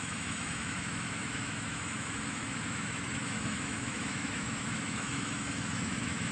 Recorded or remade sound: remade